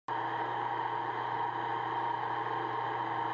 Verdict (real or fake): real